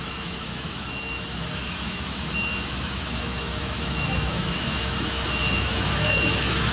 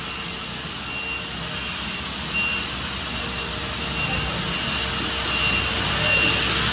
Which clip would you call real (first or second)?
second